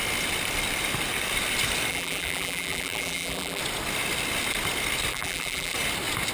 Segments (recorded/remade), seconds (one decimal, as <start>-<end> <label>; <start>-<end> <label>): 0.0-1.9 recorded; 1.9-3.6 remade; 3.6-5.1 recorded; 5.1-5.7 remade; 5.7-6.3 recorded